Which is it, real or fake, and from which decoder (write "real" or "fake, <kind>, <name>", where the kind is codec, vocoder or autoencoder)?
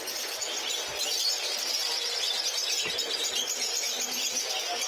real